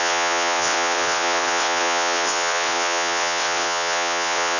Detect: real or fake fake